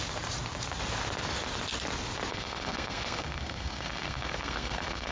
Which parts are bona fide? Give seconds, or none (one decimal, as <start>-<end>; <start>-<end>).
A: 0.0-2.3